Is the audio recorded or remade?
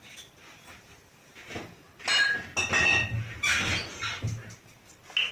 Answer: recorded